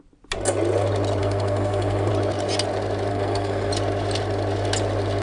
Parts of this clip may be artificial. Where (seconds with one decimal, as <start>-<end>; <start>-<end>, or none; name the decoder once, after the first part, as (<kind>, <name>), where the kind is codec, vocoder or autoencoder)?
1.2-2.1 (codec, SNAC); 3.1-3.7